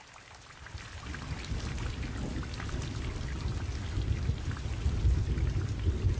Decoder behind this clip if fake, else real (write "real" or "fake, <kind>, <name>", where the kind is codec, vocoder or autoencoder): real